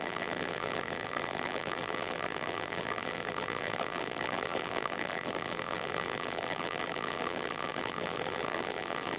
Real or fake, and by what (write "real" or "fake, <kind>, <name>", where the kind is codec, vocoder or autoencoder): fake, vocoder, BigVGAN v2